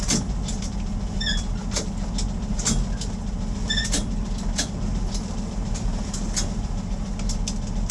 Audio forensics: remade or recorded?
recorded